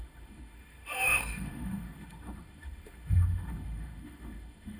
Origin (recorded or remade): remade